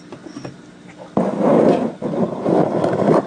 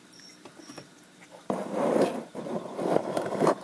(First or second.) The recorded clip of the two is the first